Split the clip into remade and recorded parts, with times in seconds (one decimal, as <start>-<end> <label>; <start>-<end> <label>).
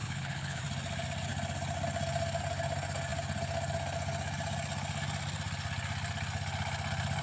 0.0-0.6 remade; 0.6-7.2 recorded